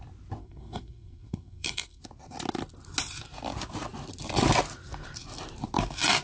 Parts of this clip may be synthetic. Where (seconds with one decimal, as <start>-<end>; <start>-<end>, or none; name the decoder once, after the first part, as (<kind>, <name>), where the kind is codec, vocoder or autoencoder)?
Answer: 0.4-2.0 (codec, SNAC)